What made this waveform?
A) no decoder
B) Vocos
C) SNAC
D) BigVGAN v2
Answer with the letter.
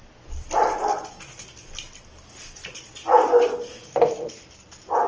A